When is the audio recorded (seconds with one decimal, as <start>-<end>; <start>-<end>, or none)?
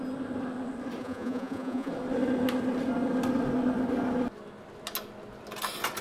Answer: 0.0-1.0; 1.9-6.0